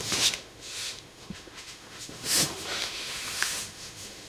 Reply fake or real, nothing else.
fake